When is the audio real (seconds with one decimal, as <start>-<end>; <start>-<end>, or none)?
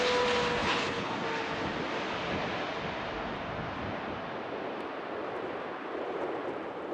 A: 0.0-0.6; 1.1-6.9